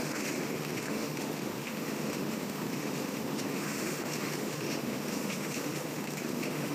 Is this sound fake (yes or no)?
yes